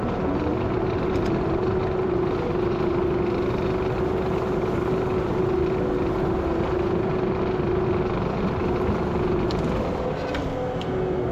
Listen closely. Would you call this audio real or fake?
real